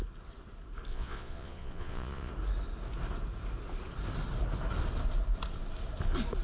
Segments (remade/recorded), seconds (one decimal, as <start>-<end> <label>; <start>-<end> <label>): 0.0-0.9 recorded; 0.9-2.3 remade; 2.3-6.4 recorded

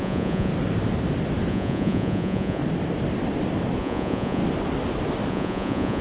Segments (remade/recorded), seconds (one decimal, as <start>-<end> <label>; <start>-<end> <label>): 0.0-0.5 remade; 0.5-1.5 recorded; 1.5-2.6 remade; 2.6-3.8 recorded; 3.8-4.4 remade; 4.4-5.3 recorded; 5.3-6.0 remade

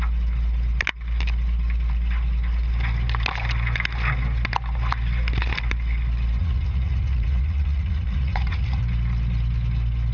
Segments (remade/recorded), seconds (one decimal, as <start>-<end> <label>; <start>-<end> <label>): 0.0-6.4 recorded; 6.4-8.8 remade; 8.8-10.1 recorded

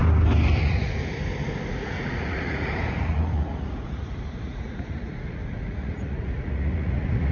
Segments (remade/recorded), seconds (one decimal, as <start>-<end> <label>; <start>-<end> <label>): 0.0-0.6 recorded; 0.6-1.0 remade; 1.0-1.7 recorded; 1.7-7.3 remade

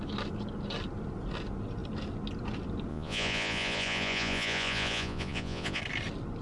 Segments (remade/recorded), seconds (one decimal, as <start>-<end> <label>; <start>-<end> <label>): 0.0-2.9 recorded; 2.9-5.8 remade; 5.8-6.4 recorded

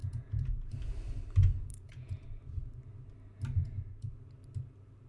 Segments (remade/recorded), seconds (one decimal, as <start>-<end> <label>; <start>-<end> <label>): 0.0-0.7 remade; 0.7-1.7 recorded; 1.7-2.4 remade; 2.4-3.6 recorded; 3.6-4.1 remade; 4.1-5.1 recorded